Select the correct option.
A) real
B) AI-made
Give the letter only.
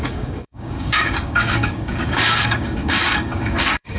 B